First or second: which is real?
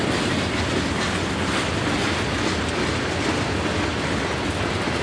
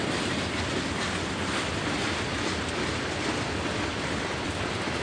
first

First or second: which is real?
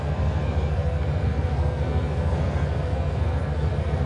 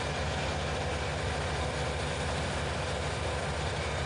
second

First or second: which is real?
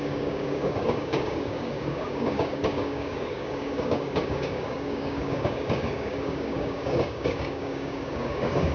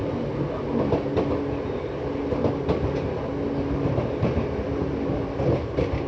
second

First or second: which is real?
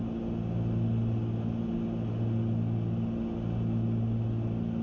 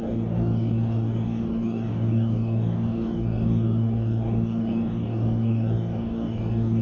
first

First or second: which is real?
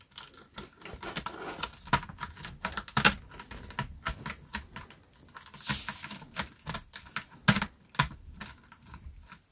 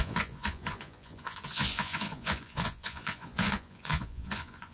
first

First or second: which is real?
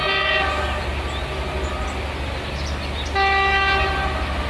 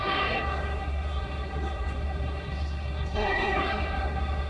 first